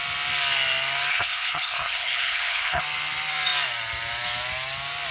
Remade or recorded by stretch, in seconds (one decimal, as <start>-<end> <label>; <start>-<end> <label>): 0.0-1.1 recorded; 1.1-2.8 remade; 2.8-5.1 recorded